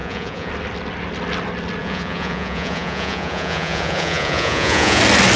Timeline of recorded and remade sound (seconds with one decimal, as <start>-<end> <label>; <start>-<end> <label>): 0.0-0.5 remade; 0.5-1.8 recorded; 1.8-5.0 remade; 5.0-5.4 recorded